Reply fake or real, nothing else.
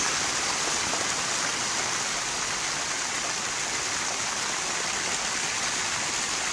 real